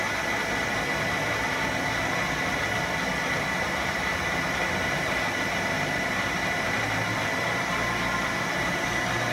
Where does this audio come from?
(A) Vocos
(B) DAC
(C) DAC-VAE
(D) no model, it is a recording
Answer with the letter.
D